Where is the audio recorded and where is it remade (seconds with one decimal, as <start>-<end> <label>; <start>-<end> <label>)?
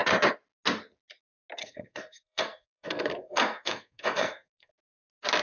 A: 0.0-1.6 recorded; 1.6-4.7 remade; 4.7-5.4 recorded